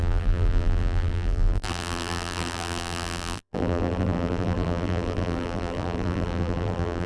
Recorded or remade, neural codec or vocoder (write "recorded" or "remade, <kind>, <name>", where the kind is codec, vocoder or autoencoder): remade, vocoder, BigVGAN v2